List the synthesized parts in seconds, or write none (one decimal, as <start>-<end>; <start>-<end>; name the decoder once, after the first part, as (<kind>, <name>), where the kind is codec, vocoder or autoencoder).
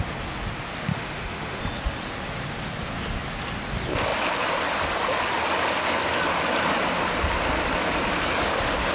0.9-1.6 (autoencoder, DAC-VAE)